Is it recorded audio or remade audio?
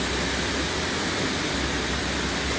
recorded